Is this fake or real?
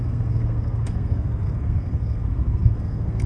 fake